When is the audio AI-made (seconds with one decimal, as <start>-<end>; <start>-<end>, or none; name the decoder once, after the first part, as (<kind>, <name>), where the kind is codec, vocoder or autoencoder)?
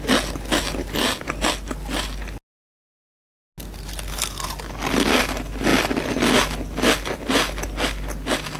none